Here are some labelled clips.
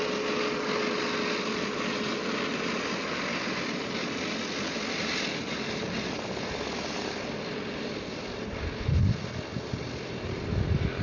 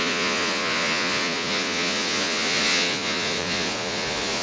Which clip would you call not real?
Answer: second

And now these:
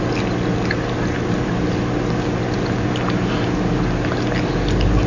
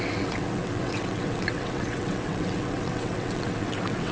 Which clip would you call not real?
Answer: second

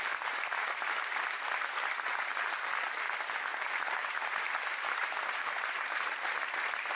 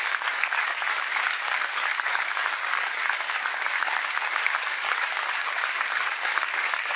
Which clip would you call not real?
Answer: second